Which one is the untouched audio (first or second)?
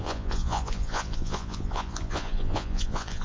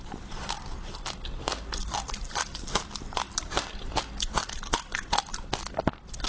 second